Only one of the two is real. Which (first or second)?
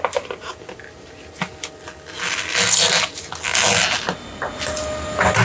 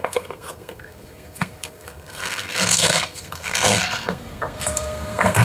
first